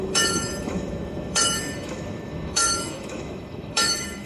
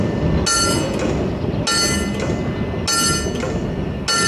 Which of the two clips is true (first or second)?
second